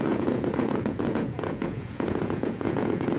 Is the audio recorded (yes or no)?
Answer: no